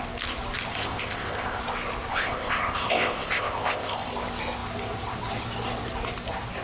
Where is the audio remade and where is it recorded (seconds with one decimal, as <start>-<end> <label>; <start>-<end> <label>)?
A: 0.0-0.7 recorded; 0.7-1.6 remade; 1.6-2.1 recorded; 2.1-4.1 remade; 4.1-6.6 recorded

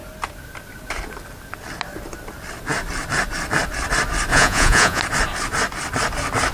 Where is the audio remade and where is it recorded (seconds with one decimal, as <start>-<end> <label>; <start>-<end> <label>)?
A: 0.0-4.3 recorded; 4.3-5.0 remade; 5.0-6.5 recorded

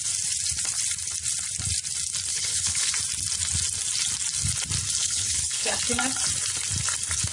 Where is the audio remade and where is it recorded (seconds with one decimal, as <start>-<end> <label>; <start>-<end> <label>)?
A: 0.0-2.3 recorded; 2.3-2.9 remade; 2.9-5.0 recorded; 5.0-5.7 remade; 5.7-7.3 recorded

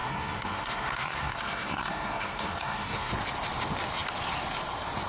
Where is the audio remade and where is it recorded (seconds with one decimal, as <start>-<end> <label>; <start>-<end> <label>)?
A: 0.0-3.1 remade; 3.1-5.1 recorded

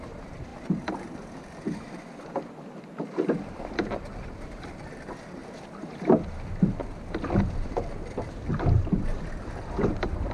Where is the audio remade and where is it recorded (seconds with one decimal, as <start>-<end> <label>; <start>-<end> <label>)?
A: 0.0-10.3 recorded

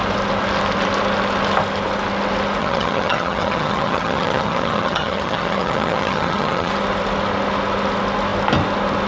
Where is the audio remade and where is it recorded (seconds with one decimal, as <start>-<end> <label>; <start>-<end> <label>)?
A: 0.0-2.6 recorded; 2.6-6.7 remade; 6.7-9.1 recorded